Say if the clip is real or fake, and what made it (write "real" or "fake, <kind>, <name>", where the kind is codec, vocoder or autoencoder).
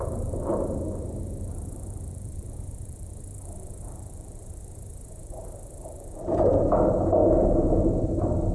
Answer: fake, vocoder, BigVGAN v2